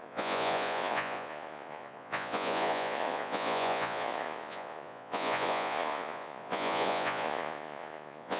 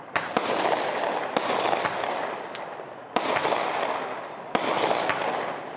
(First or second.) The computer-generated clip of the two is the first